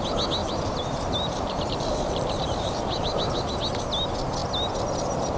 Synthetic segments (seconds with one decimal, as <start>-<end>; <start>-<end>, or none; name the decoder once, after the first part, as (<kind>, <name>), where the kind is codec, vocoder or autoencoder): 0.4-3.6 (vocoder, BigVGAN v2)